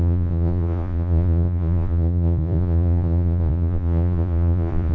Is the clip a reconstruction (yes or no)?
yes